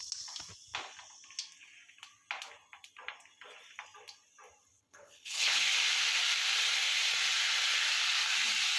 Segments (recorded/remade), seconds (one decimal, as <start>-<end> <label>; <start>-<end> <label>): 0.0-4.8 recorded; 4.8-5.6 remade; 5.6-8.8 recorded